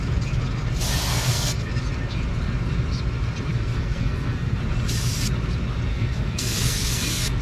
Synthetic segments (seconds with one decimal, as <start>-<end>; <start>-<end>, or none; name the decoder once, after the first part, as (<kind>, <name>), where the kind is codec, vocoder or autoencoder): 1.1-1.7 (codec, SNAC); 3.5-4.6; 5.9-7.4